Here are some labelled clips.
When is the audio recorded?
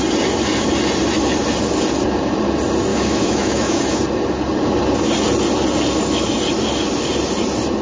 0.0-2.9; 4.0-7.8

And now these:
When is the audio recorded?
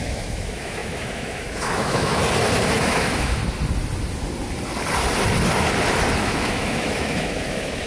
2.2-2.8; 3.4-6.2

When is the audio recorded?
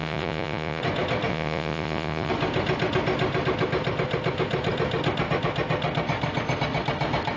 0.8-1.3; 2.3-7.4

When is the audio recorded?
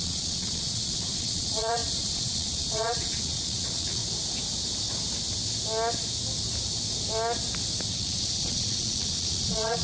4.0-7.9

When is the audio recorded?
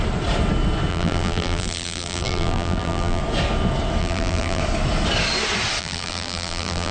0.0-0.9; 3.2-4.0; 4.6-5.8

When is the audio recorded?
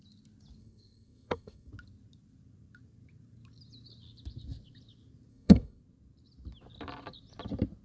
0.0-0.6; 1.7-5.3; 5.8-7.8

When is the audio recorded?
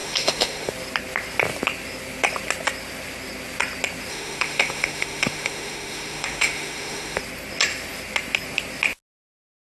0.7-4.1; 7.2-9.6